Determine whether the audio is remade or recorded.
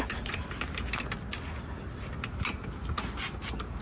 recorded